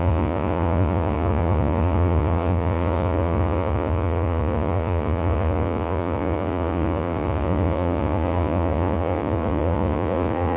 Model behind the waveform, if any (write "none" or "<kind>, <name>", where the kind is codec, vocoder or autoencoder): vocoder, Vocos